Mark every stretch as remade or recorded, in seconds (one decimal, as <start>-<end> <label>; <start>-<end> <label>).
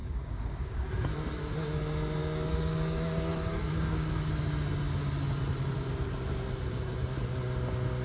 0.0-1.1 remade; 1.1-2.2 recorded; 2.2-4.3 remade; 4.3-8.0 recorded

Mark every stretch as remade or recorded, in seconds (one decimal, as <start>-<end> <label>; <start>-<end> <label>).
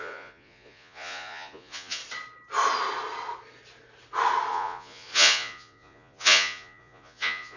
0.0-2.0 remade; 2.0-4.5 recorded; 4.5-7.6 remade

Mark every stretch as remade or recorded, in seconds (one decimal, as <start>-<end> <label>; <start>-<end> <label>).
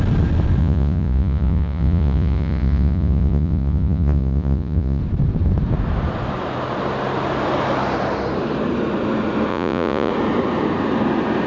0.0-0.6 recorded; 0.6-5.0 remade; 5.0-9.5 recorded; 9.5-10.1 remade; 10.1-11.5 recorded